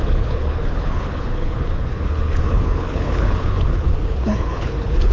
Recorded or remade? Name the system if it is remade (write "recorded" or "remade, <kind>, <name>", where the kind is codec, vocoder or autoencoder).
remade, codec, HILCodec